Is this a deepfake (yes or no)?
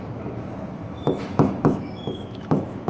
yes